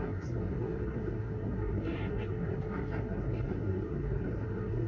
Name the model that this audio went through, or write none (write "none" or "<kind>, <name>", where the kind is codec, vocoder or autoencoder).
codec, SNAC